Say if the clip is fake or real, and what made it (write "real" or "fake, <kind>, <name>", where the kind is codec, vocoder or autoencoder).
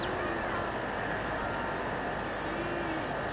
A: real